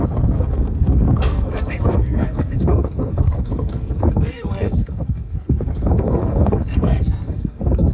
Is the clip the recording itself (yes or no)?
no